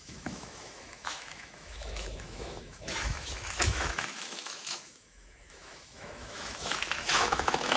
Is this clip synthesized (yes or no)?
yes